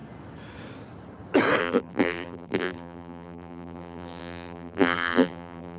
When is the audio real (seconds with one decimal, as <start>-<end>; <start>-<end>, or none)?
0.0-1.6

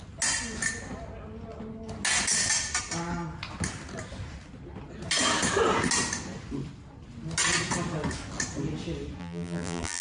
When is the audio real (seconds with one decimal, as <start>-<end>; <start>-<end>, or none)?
0.0-9.2

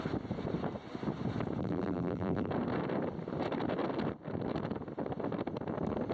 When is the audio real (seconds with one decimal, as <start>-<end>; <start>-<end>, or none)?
0.0-1.6; 2.5-6.1

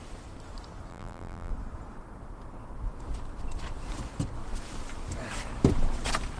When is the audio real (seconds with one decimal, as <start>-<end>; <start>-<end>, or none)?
0.0-0.9; 1.5-6.4

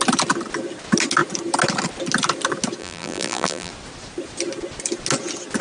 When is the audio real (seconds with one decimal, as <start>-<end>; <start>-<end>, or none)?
0.0-2.8; 3.7-5.6

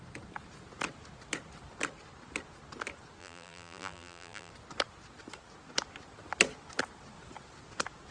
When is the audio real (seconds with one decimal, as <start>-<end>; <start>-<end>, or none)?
0.0-3.2; 4.5-8.1